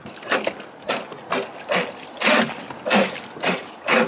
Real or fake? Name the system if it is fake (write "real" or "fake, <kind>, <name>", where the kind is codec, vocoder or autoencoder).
real